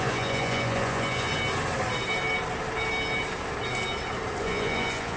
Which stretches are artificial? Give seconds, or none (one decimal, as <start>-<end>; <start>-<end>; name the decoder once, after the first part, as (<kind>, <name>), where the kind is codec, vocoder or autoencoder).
0.0-1.3 (vocoder, Vocos); 4.4-5.2